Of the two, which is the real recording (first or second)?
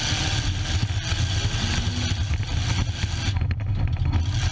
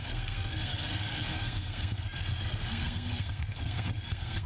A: first